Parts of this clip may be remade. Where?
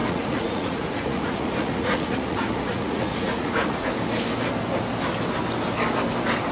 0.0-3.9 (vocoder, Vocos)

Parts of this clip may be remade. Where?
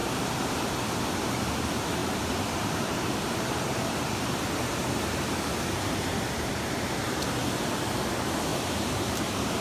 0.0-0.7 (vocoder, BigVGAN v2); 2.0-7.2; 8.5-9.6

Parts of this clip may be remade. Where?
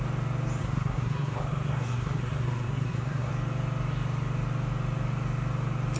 0.6-3.3 (codec, SNAC)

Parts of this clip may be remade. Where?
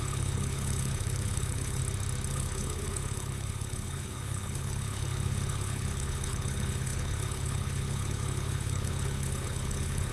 0.0-1.8 (codec, HILCodec); 2.3-10.1